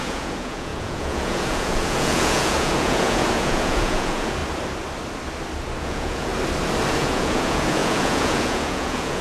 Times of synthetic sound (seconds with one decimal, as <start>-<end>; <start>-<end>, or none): 0.0-4.4; 5.8-6.3; 6.9-9.2